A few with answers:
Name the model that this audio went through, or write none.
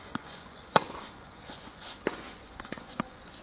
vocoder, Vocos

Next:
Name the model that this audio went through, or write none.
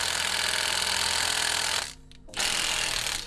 none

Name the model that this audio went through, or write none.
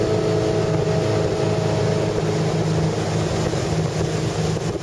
none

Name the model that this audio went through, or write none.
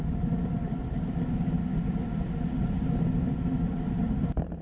none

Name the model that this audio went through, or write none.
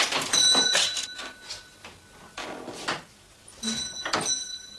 none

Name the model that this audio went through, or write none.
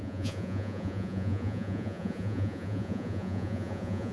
vocoder, Vocos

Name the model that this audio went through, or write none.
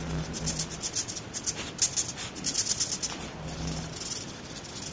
none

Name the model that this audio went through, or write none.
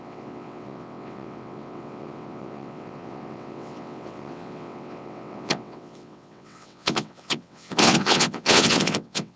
vocoder, WaveNeXt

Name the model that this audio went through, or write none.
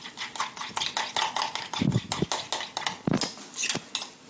none